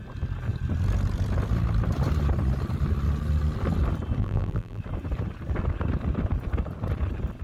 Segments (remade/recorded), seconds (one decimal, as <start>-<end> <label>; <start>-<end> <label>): 0.0-4.2 recorded; 4.2-4.8 remade; 4.8-7.4 recorded